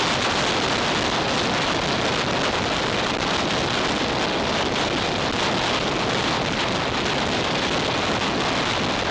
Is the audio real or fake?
real